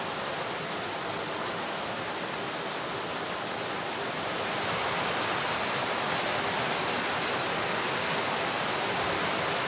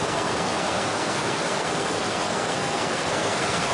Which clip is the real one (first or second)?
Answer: first